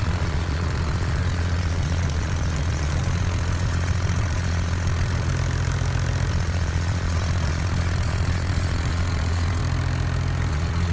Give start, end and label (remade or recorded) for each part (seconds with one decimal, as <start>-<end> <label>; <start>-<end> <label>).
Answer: 0.0-5.3 remade; 5.3-6.3 recorded; 6.3-9.6 remade; 9.6-10.5 recorded; 10.5-10.9 remade